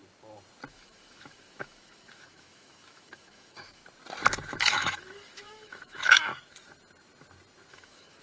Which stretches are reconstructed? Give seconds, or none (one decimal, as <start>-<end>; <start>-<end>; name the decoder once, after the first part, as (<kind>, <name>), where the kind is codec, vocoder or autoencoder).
0.7-3.8 (autoencoder, DAC-VAE); 4.6-6.3; 7.7-8.2